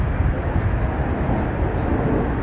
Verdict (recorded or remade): recorded